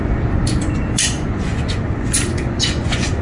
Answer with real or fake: fake